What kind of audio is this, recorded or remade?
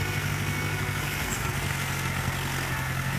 remade